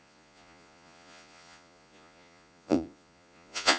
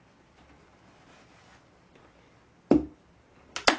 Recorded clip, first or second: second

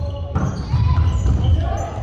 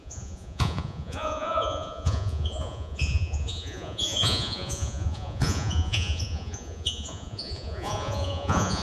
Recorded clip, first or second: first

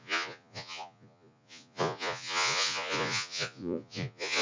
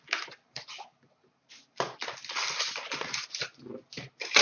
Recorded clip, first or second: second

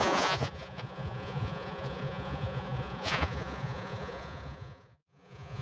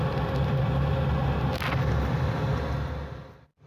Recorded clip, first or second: second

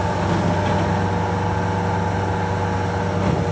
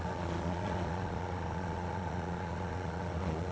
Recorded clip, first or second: first